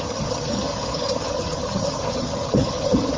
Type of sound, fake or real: fake